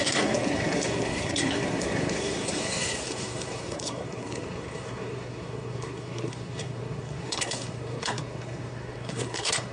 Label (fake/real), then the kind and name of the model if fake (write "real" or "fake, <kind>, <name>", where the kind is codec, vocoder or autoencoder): fake, codec, SNAC